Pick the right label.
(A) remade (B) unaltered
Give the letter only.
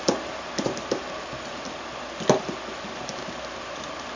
B